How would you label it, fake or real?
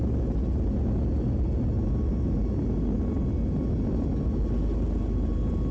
real